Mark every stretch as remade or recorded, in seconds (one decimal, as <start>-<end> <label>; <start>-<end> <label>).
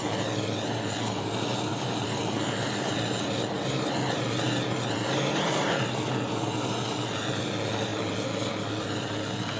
0.0-9.6 recorded